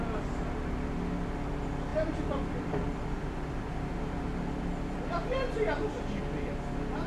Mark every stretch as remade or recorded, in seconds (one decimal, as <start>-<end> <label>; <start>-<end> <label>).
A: 0.0-1.9 recorded; 1.9-6.2 remade; 6.2-7.1 recorded